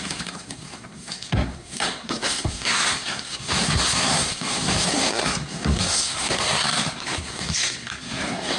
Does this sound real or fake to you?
fake